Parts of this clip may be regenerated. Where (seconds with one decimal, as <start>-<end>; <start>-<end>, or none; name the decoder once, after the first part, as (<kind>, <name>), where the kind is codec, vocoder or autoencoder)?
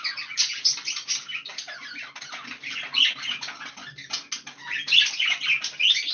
none